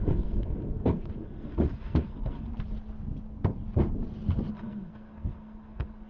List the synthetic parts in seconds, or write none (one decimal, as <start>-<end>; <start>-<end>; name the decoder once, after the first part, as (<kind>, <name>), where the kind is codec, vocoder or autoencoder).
0.0-2.5 (codec, SNAC); 4.5-6.1